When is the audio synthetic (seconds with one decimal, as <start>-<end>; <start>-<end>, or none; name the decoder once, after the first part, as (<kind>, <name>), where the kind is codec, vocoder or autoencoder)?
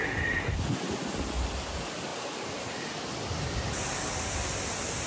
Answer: none